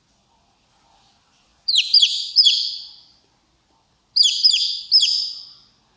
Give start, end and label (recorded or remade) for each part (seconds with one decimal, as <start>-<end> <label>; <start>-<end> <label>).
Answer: 0.0-6.0 recorded